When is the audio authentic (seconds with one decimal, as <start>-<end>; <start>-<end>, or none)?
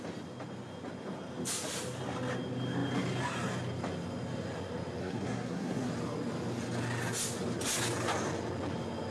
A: 0.0-5.0; 5.9-9.1